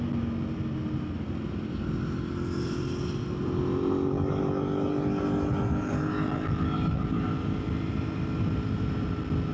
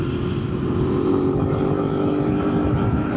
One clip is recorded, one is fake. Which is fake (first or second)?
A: second